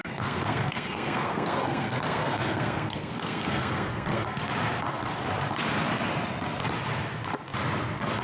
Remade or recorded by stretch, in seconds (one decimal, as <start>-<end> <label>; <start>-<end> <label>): 0.0-4.4 remade; 4.4-8.2 recorded